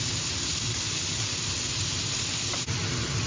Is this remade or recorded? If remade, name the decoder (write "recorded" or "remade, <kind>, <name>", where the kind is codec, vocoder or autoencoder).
recorded